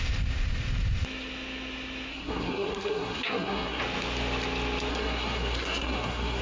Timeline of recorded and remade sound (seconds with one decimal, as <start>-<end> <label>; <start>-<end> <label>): 0.0-2.1 recorded; 2.1-3.8 remade; 3.8-4.9 recorded; 4.9-6.4 remade